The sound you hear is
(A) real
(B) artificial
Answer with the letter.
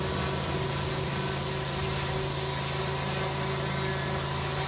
A